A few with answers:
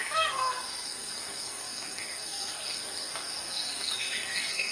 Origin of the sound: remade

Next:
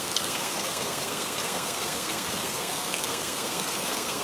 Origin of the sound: remade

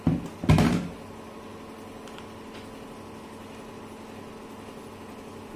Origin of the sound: recorded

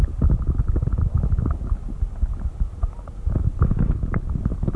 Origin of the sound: recorded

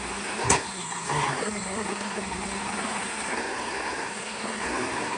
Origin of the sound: remade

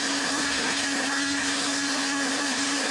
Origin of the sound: remade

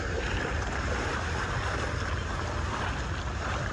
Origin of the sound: recorded